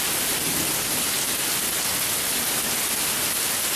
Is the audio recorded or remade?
recorded